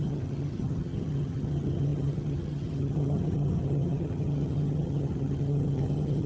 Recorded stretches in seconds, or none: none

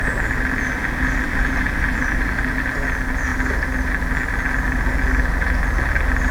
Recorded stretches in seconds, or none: 0.0-6.3

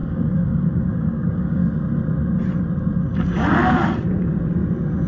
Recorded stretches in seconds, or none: 1.6-5.1

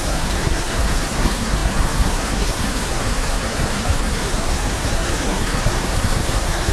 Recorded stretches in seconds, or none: none

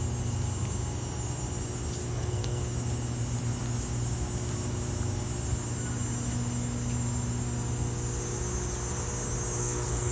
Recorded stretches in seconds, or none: 0.0-2.0; 2.6-9.6

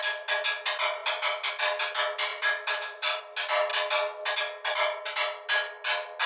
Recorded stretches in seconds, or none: 0.0-1.0; 1.5-2.3; 3.2-6.3